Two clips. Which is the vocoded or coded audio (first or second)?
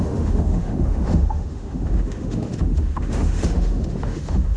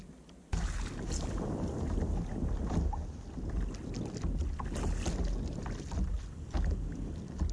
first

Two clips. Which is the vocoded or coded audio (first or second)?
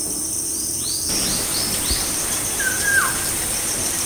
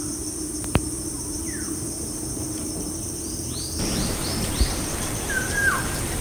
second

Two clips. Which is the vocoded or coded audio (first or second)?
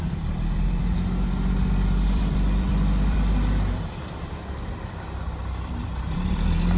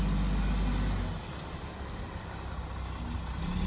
first